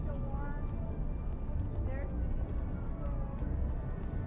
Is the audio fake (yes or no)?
no